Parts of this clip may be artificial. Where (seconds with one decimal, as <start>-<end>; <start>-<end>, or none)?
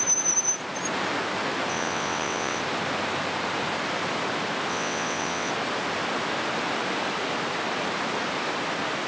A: 1.7-2.6; 4.7-5.5